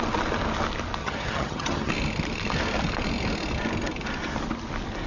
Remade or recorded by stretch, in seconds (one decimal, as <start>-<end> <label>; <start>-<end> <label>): 0.0-1.0 recorded; 1.0-1.9 remade; 1.9-5.1 recorded